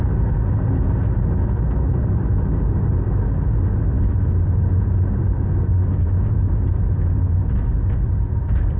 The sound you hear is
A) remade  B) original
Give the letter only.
B